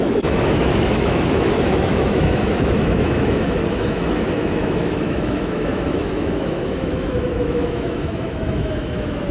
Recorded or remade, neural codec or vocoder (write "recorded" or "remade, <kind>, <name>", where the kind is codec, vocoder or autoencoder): remade, autoencoder, DAC-VAE